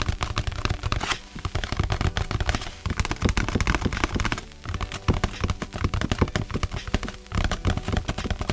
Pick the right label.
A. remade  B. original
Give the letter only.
B